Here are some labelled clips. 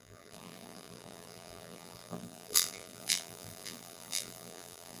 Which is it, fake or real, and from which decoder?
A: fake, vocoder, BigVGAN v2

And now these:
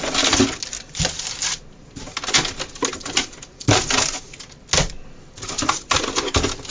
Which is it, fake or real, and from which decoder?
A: real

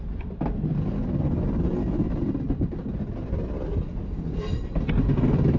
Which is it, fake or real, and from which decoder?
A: real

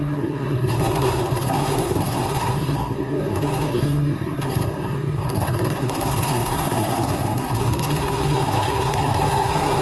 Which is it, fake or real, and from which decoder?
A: fake, codec, SNAC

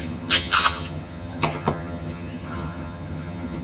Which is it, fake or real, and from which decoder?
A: fake, vocoder, HiFi-GAN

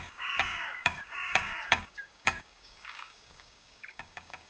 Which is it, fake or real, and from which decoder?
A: fake, codec, DAC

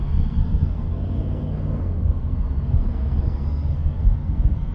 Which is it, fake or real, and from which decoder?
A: fake, codec, SNAC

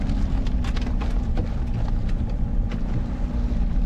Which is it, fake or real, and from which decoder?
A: real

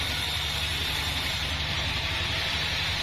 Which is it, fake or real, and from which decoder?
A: fake, vocoder, BigVGAN v2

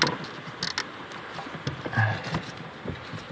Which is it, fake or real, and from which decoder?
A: real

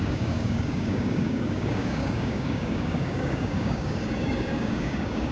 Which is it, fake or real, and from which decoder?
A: fake, codec, DAC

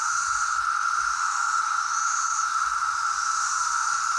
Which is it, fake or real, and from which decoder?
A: real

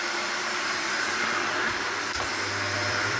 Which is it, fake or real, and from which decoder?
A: fake, vocoder, BigVGAN v2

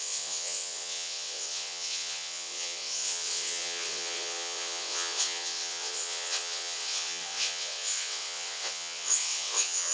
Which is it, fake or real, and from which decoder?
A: fake, vocoder, WaveNeXt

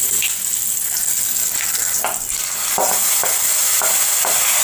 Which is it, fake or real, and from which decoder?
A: real